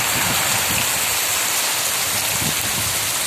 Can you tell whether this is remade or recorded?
recorded